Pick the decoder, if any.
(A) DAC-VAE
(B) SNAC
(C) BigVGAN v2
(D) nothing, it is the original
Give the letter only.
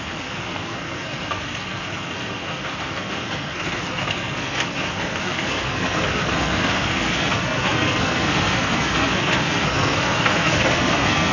B